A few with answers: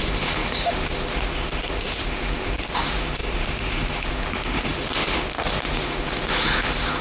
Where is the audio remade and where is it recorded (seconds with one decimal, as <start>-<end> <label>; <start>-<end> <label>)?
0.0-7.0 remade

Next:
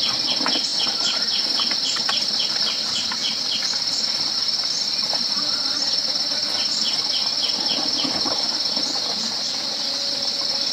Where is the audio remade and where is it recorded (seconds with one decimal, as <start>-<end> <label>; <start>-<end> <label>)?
0.0-10.7 recorded

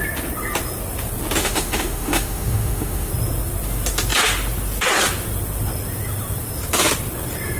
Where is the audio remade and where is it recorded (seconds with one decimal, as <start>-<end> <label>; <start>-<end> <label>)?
0.0-1.4 recorded; 1.4-3.1 remade; 3.1-7.6 recorded

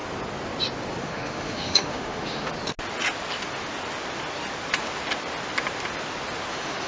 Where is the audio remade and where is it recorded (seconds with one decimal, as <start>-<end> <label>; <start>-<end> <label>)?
0.0-1.0 recorded; 1.0-2.5 remade; 2.5-6.5 recorded; 6.5-6.9 remade

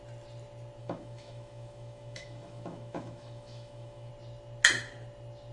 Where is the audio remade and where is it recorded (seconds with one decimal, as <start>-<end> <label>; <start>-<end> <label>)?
0.0-0.8 recorded; 0.8-4.1 remade; 4.1-5.5 recorded

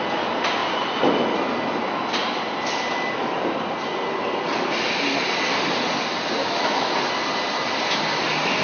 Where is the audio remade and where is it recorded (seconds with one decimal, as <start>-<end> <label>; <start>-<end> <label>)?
0.0-6.4 recorded; 6.4-6.9 remade; 6.9-8.6 recorded

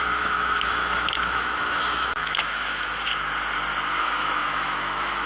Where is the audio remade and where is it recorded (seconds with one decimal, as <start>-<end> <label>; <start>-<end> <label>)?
0.0-3.1 remade; 3.1-4.0 recorded; 4.0-5.3 remade

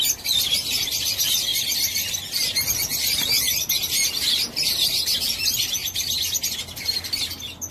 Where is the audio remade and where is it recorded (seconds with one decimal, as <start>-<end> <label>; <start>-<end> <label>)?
0.0-7.7 recorded